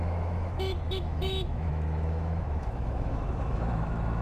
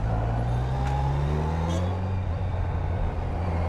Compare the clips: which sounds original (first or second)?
second